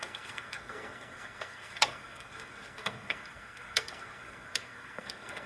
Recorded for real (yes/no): no